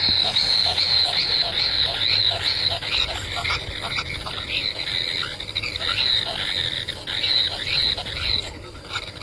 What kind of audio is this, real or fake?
real